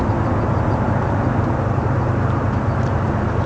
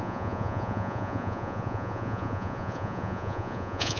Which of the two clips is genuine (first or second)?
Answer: first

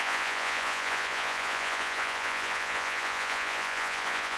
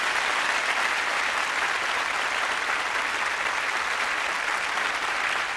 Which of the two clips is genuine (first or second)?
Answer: second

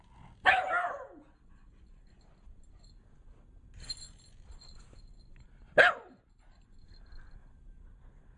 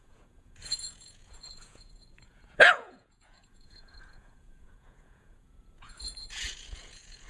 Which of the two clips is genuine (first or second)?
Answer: first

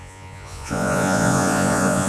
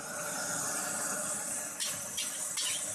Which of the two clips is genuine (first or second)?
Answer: second